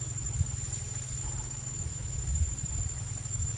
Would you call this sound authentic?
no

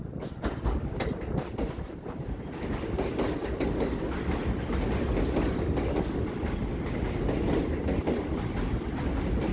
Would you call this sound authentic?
yes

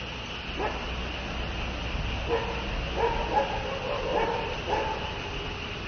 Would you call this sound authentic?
yes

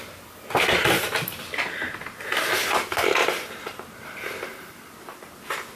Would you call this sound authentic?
yes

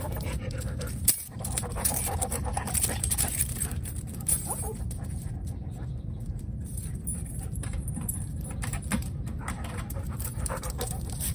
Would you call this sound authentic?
no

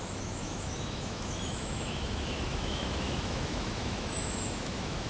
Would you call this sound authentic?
no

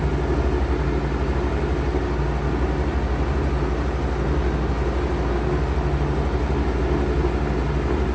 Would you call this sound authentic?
yes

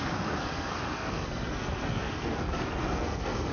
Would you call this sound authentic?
no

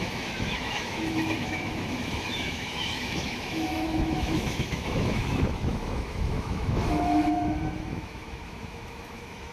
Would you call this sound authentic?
no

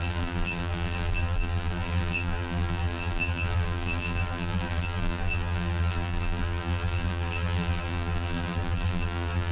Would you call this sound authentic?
no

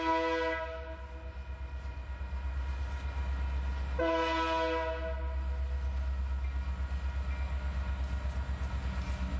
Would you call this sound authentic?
yes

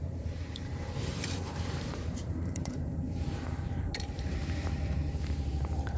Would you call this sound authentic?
no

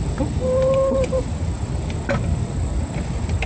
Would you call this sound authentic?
yes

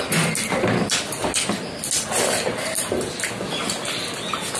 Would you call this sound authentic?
yes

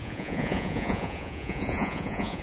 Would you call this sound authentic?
no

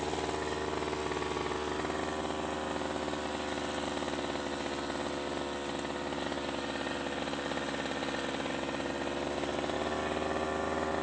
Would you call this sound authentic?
yes